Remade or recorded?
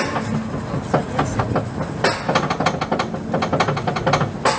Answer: recorded